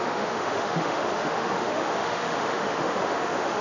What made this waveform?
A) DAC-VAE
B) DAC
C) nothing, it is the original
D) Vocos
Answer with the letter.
A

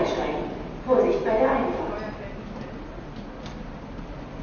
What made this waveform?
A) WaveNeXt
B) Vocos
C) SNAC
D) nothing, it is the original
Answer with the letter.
D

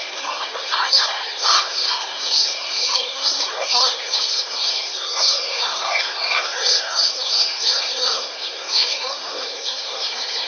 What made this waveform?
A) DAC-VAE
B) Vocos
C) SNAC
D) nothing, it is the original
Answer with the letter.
C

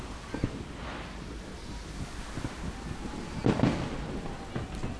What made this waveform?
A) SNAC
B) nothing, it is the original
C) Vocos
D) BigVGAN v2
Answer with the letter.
B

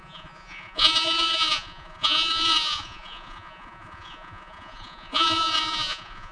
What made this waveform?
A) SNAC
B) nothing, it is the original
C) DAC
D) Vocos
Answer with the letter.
D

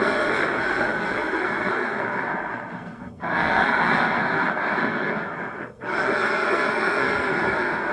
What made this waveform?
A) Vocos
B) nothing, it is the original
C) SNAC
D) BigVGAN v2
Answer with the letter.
C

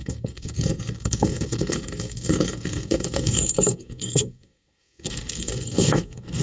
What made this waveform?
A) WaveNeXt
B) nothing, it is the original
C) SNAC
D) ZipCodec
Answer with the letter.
C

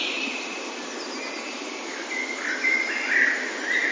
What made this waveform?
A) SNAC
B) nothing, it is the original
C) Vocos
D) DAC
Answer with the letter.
B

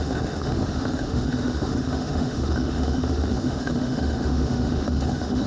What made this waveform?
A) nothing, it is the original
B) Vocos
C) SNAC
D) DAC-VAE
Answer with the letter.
D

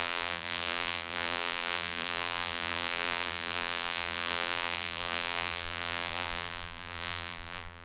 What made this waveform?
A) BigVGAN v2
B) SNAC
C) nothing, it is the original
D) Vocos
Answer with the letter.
A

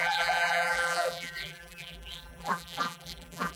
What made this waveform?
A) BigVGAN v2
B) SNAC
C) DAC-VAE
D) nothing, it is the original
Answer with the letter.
A